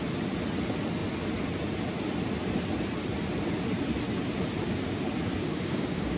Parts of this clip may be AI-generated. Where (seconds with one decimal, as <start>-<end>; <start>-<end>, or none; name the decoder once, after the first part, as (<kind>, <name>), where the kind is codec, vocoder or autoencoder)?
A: 5.3-6.2 (codec, DAC)